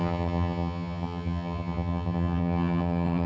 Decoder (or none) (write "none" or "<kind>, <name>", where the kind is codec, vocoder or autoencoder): vocoder, HiFi-GAN